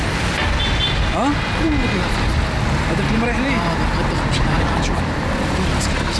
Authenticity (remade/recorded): recorded